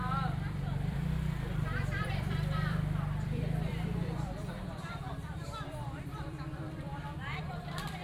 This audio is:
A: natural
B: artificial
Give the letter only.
B